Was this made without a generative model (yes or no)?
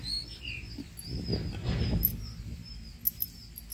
yes